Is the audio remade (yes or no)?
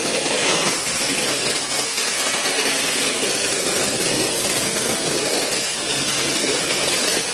yes